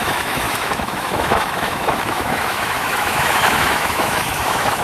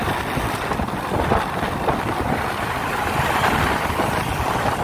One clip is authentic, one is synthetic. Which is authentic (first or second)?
second